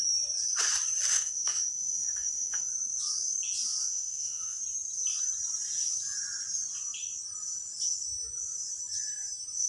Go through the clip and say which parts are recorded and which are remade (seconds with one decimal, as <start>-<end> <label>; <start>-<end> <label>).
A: 0.0-1.1 recorded; 1.1-2.7 remade; 2.7-3.8 recorded; 3.8-4.6 remade; 4.6-9.7 recorded